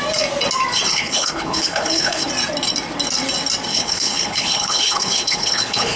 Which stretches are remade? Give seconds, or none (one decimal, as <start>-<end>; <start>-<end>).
0.9-2.3; 3.7-6.0